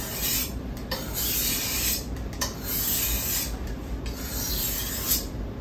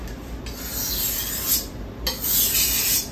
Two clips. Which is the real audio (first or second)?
second